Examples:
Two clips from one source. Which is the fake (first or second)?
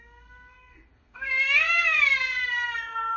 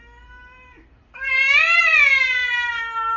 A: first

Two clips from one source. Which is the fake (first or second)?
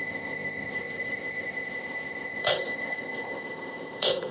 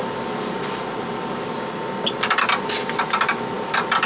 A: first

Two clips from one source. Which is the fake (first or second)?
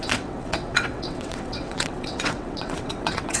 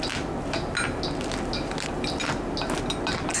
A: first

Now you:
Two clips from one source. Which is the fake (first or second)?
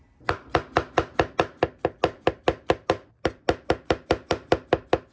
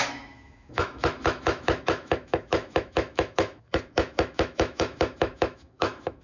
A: second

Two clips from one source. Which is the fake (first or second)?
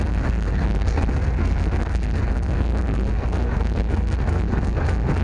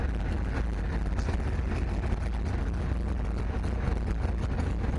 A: first